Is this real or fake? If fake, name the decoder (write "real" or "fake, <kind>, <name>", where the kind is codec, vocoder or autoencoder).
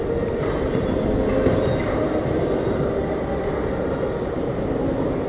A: real